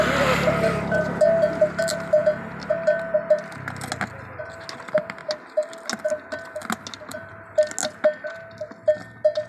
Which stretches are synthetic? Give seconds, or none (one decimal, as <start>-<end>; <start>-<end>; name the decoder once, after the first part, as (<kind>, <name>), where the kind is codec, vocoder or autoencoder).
none